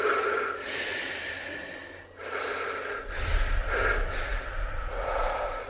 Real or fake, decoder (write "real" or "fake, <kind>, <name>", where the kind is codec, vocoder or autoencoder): real